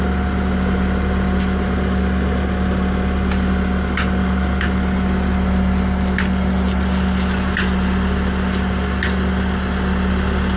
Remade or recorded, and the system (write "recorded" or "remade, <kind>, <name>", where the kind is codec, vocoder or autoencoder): recorded